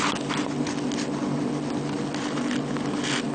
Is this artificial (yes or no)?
no